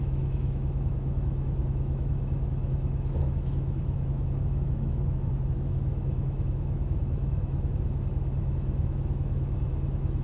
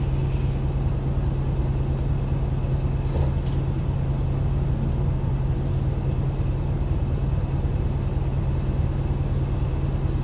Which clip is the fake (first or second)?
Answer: first